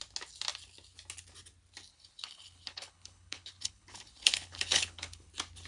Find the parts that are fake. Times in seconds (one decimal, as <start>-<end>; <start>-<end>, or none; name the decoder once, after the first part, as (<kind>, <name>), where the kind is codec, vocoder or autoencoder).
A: 1.9-5.3 (codec, HILCodec)